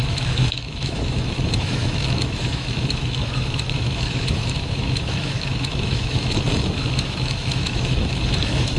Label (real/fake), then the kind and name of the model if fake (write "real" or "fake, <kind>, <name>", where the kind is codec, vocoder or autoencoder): fake, autoencoder, DAC-VAE